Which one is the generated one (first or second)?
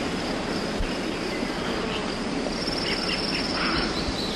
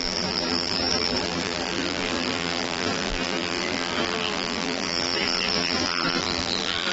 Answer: second